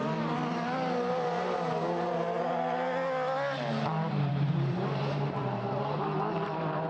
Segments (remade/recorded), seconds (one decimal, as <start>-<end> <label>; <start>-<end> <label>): 0.0-2.5 remade; 2.5-4.3 recorded; 4.3-6.9 remade